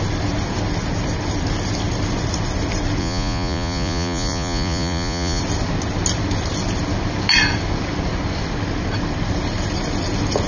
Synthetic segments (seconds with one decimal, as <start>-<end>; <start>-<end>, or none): 3.0-5.4